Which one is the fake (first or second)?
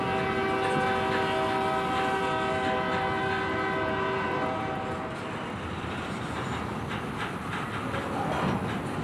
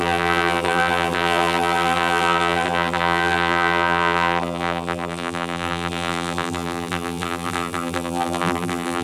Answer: second